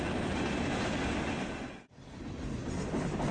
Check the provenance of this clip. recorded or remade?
recorded